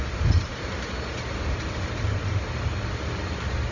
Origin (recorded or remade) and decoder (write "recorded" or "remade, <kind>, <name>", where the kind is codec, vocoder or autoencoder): recorded